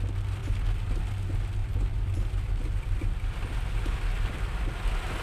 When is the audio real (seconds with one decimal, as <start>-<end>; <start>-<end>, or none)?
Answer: 0.0-0.4; 1.0-1.6; 4.4-5.2